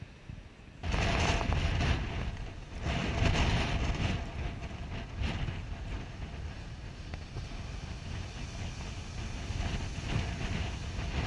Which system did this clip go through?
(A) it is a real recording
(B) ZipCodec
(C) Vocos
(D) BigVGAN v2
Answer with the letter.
A